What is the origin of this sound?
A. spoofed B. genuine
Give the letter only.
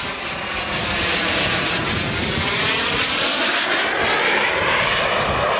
B